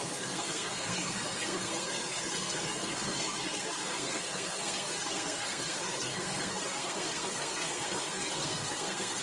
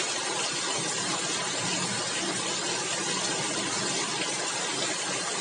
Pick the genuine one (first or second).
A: second